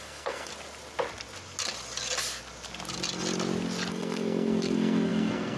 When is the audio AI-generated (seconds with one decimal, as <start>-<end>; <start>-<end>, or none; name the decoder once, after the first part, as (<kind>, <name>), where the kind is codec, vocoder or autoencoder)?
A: 0.0-0.5 (codec, SNAC); 3.9-5.6